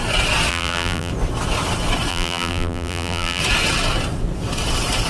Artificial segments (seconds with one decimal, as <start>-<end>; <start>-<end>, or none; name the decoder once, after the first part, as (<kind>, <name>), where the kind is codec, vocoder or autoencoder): 0.5-1.1 (vocoder, BigVGAN v2); 2.1-3.4

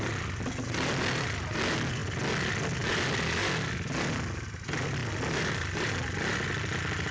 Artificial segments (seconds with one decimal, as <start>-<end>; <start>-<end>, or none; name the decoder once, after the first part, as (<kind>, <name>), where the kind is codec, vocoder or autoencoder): none

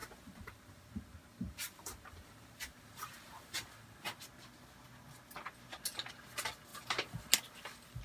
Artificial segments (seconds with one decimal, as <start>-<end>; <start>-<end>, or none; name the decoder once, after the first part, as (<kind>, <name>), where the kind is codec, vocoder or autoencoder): 0.0-4.2 (vocoder, BigVGAN v2); 6.7-7.2

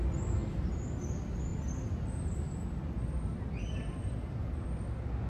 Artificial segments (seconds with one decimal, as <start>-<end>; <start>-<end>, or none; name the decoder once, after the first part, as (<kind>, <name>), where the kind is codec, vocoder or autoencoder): none

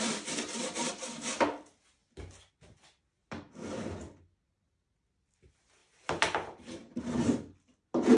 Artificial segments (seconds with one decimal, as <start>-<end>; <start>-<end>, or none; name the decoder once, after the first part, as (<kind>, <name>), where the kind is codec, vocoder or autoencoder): 5.8-7.0 (vocoder, BigVGAN v2)

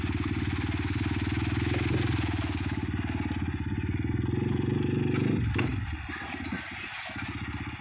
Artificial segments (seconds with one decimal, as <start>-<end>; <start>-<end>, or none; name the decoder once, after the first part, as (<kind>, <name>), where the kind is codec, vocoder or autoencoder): 5.7-7.8 (vocoder, BigVGAN v2)

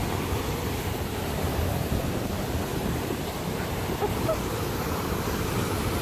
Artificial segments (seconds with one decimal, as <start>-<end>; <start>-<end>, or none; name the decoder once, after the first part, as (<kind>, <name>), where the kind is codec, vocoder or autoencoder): 1.5-2.3 (vocoder, BigVGAN v2); 2.7-4.5